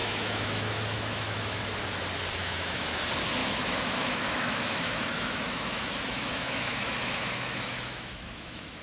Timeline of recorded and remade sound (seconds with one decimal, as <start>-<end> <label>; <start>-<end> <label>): 0.0-1.6 remade; 1.6-2.4 recorded; 2.4-3.0 remade; 3.0-3.4 recorded; 3.4-8.8 remade